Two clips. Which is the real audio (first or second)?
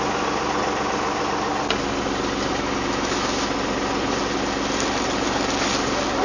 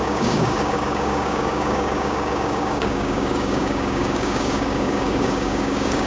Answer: first